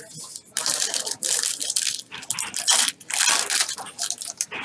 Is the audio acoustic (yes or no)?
yes